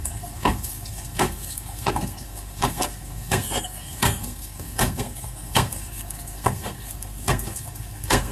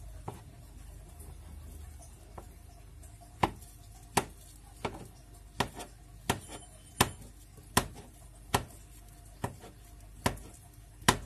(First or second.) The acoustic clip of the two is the second